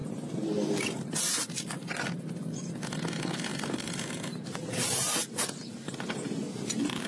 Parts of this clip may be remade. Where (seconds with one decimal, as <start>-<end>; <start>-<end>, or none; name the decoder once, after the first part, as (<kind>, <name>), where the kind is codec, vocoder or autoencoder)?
0.0-0.8 (vocoder, BigVGAN v2); 3.5-7.1